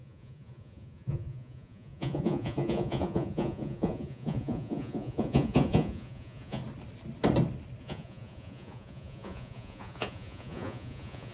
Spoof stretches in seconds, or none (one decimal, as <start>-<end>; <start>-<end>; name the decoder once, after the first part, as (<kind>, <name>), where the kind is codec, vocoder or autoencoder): 0.0-6.6 (vocoder, Vocos); 7.8-11.3